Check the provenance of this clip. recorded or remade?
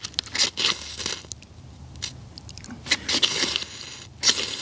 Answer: recorded